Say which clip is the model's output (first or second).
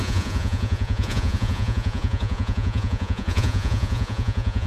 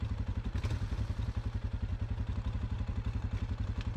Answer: first